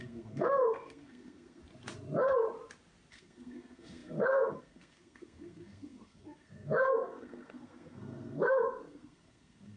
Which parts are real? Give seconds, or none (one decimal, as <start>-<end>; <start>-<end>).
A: 1.6-3.1